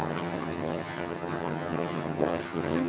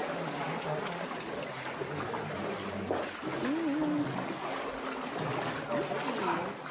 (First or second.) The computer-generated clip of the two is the first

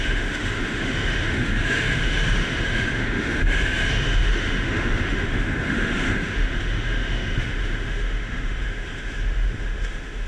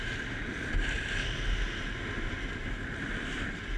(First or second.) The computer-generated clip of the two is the first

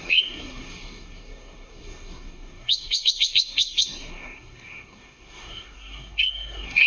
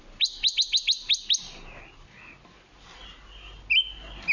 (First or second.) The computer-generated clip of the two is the first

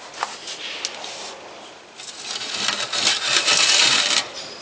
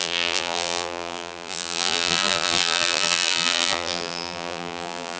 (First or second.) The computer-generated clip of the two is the second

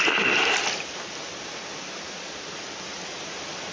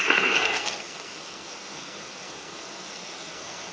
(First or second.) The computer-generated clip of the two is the second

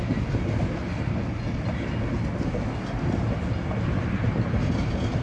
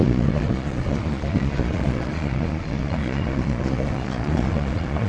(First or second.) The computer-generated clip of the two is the second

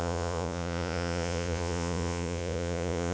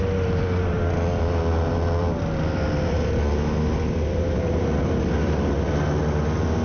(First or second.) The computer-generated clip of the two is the first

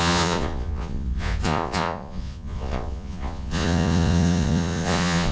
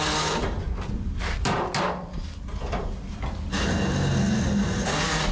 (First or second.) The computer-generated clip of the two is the first